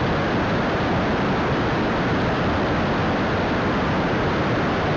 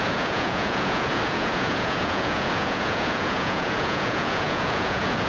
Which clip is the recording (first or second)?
first